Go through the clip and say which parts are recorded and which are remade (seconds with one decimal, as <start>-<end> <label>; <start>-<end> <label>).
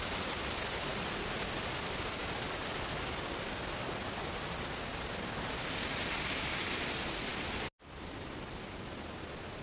0.0-9.6 recorded